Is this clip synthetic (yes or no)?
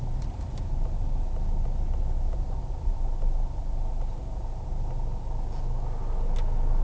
no